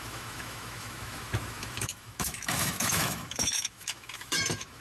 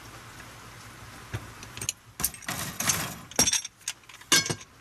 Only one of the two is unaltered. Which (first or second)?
second